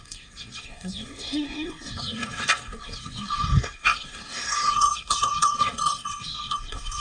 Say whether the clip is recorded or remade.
remade